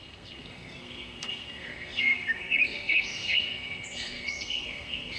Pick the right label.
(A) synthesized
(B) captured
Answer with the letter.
A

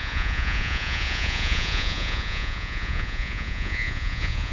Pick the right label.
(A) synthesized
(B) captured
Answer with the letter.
A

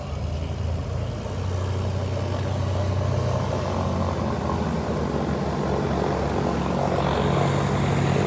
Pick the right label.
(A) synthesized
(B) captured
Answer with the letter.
B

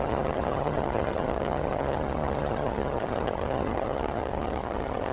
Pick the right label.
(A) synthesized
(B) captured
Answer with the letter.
A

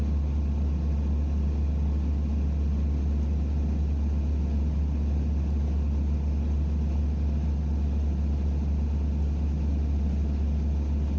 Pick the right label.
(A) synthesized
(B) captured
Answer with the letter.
B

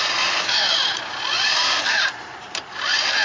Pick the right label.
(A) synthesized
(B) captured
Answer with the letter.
A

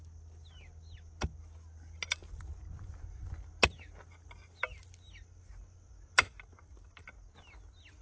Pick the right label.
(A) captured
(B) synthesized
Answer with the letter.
A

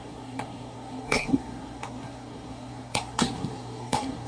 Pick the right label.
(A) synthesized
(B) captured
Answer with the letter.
A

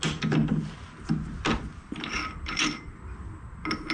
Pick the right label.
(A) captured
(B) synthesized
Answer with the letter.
A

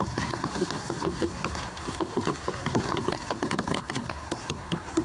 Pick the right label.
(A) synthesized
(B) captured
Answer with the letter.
A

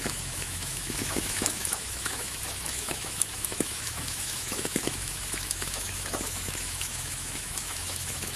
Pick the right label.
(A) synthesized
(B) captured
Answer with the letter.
A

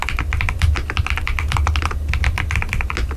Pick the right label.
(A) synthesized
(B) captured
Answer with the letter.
B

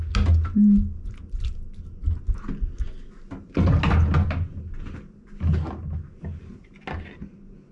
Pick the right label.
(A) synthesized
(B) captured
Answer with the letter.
B